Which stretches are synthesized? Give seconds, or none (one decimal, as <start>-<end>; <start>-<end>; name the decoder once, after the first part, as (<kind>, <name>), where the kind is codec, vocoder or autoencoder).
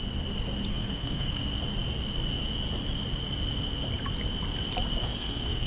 0.7-1.3 (codec, SNAC); 5.0-5.7